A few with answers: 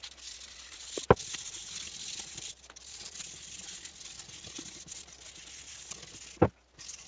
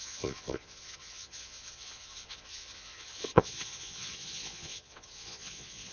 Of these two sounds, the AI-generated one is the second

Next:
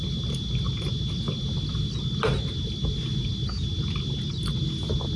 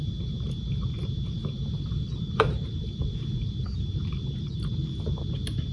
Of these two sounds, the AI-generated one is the second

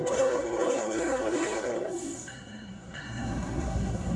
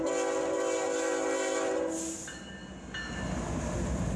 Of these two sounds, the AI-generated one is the first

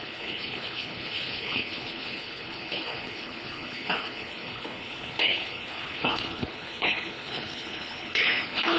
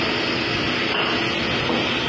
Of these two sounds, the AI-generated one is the first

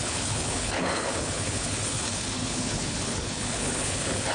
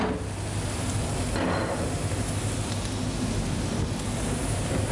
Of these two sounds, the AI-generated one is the first